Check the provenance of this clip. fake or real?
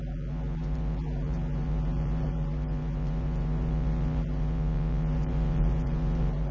fake